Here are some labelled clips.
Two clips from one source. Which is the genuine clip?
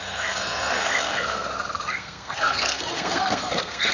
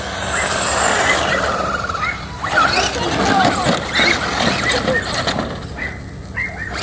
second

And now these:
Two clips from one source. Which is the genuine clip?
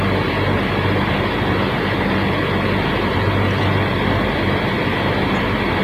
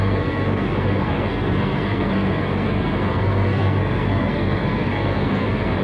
first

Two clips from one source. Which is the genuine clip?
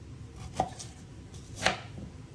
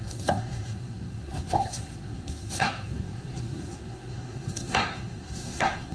first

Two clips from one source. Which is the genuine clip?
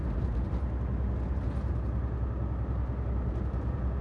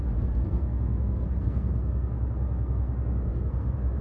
first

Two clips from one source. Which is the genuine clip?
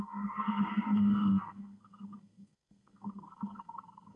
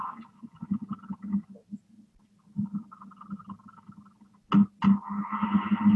second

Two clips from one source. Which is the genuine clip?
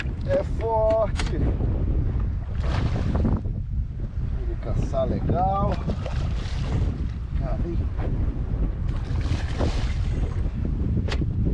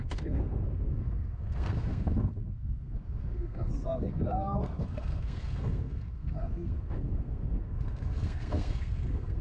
first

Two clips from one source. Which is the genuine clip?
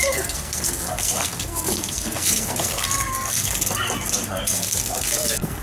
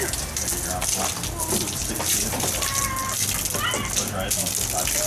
second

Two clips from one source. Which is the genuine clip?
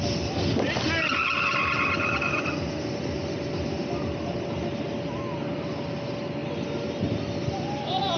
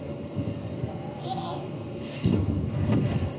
first